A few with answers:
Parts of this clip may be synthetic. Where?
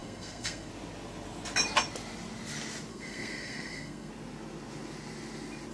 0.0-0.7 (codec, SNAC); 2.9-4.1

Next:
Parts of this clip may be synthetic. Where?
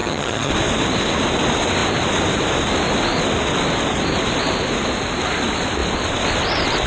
0.0-0.5 (vocoder, HiFi-GAN)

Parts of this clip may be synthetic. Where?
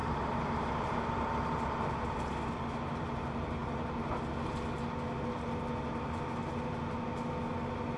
0.0-1.3 (vocoder, BigVGAN v2)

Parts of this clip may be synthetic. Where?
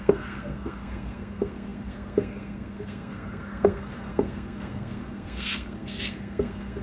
0.0-6.8 (codec, SNAC)